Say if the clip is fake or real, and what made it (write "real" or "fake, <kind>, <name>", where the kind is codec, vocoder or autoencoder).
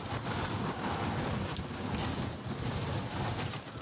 real